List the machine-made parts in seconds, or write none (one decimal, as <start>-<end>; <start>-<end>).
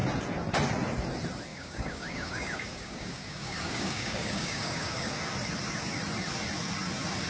1.5-5.1